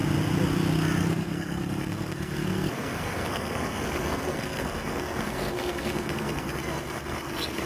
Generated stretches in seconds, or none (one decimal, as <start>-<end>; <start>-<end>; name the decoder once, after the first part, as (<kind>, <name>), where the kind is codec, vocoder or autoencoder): 1.0-7.7 (codec, SNAC)